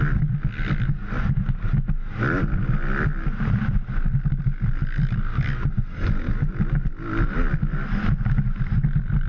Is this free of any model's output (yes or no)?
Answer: yes